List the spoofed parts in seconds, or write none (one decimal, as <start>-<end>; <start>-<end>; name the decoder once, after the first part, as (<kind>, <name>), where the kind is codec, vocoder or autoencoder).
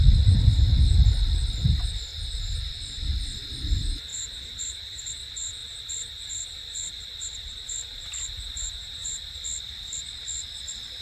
2.1-2.7 (vocoder, BigVGAN v2)